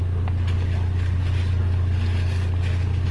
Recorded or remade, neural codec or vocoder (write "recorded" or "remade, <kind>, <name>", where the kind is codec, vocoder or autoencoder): recorded